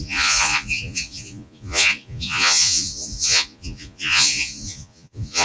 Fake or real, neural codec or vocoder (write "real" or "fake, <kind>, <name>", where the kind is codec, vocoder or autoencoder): fake, vocoder, Vocos